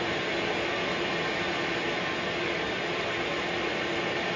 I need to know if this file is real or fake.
real